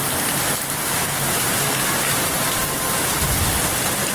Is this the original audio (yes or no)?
yes